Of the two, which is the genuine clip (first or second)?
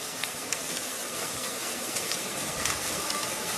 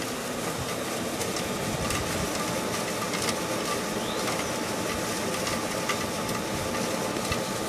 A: second